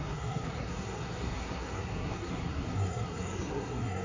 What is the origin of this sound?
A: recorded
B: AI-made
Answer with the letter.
B